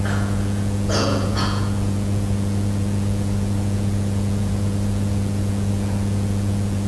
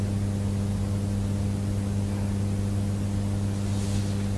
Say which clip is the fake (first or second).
first